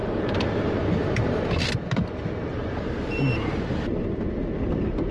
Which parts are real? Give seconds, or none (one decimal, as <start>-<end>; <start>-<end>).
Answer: 1.3-2.5; 3.9-5.1